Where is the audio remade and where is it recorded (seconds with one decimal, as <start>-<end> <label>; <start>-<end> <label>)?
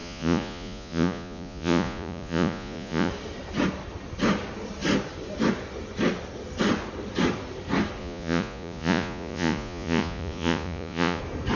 0.0-3.1 remade; 3.1-8.0 recorded; 8.0-11.2 remade; 11.2-11.6 recorded